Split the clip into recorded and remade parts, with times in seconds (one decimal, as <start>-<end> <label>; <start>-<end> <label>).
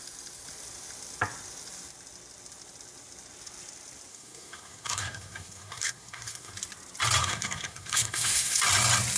0.0-4.1 recorded; 4.1-6.5 remade; 6.5-7.2 recorded; 7.2-8.6 remade; 8.6-9.2 recorded